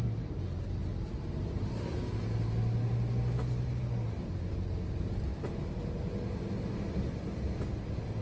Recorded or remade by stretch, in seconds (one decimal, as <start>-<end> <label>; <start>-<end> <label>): 0.0-8.2 recorded